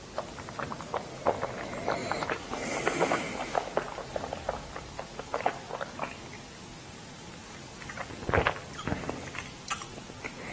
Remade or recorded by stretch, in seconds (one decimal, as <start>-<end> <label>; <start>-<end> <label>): 0.0-2.0 recorded; 2.0-3.6 remade; 3.6-5.3 recorded; 5.3-5.9 remade; 5.9-6.7 recorded; 6.7-8.1 remade; 8.1-10.5 recorded